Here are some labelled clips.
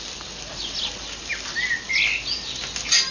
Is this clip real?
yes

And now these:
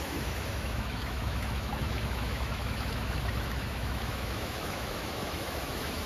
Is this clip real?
no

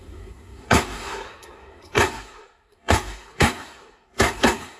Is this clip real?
no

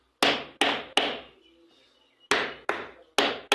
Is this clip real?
yes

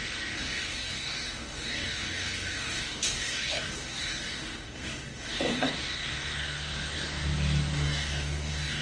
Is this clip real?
no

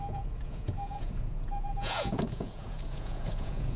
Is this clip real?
no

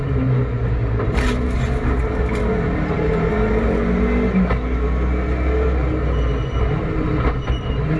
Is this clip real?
yes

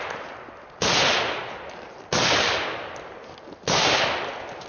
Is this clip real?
yes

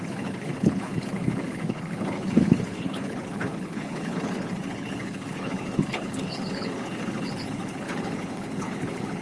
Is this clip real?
no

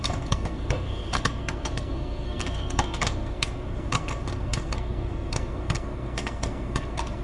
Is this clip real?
no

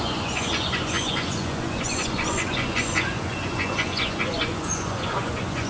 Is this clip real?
no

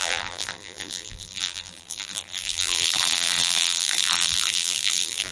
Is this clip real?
no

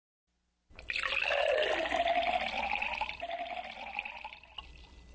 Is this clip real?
yes